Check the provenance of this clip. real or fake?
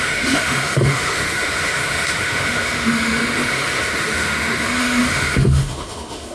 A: fake